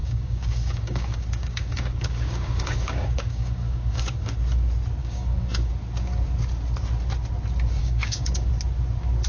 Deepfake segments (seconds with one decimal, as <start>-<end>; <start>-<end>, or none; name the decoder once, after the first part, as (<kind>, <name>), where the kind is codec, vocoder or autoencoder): 0.0-4.4 (codec, DAC); 5.0-5.7; 7.8-8.5